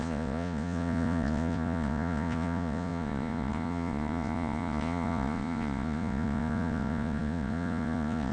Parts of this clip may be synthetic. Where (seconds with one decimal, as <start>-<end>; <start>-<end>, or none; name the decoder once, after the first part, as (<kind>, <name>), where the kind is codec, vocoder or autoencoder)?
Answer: 0.0-8.3 (vocoder, Vocos)